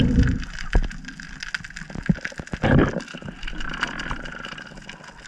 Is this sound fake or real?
real